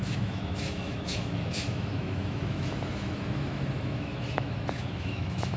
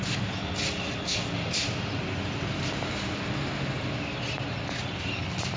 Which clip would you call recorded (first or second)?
second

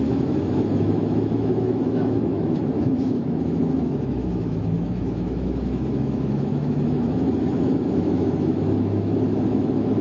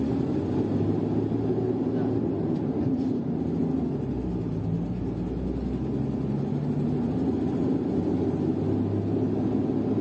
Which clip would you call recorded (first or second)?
second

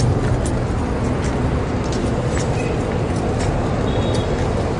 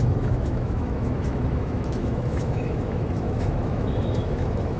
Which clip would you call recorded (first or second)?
first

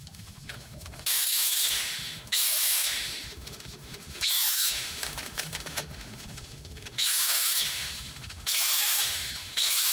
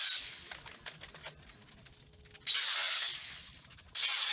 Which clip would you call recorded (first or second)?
second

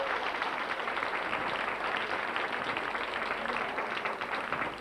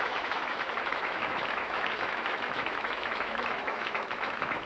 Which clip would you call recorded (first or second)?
first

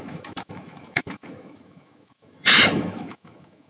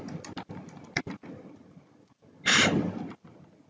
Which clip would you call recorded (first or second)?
second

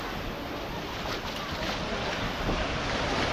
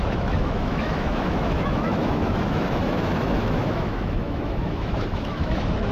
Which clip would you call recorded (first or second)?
first